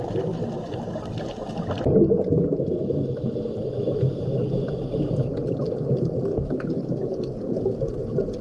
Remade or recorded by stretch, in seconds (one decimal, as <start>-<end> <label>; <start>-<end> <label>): 0.0-6.3 recorded; 6.3-7.8 remade; 7.8-8.4 recorded